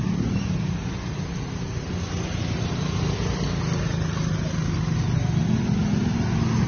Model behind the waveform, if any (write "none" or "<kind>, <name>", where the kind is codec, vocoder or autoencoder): none